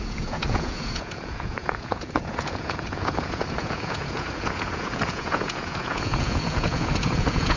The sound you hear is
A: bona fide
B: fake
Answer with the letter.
B